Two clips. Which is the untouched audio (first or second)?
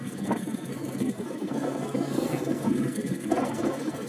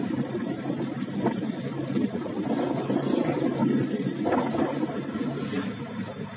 second